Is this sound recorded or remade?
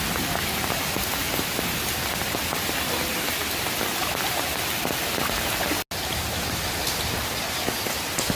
recorded